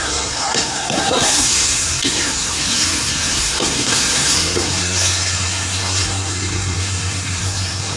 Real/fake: fake